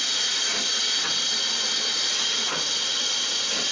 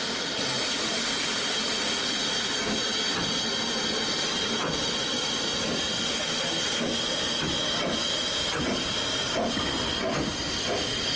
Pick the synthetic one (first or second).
first